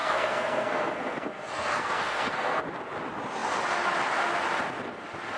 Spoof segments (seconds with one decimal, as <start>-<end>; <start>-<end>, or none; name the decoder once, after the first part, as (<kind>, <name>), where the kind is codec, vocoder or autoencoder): 0.0-2.6 (codec, SNAC)